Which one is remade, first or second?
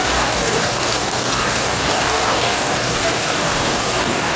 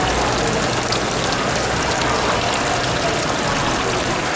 first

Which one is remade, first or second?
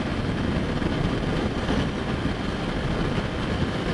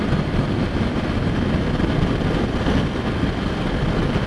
second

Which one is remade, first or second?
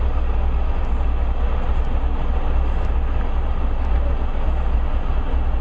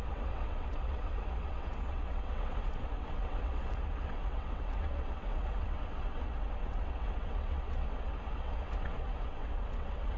second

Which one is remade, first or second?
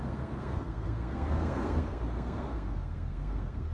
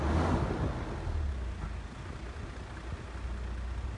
first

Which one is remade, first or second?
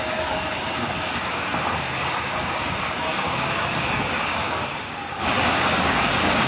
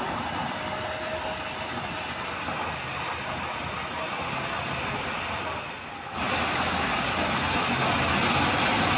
first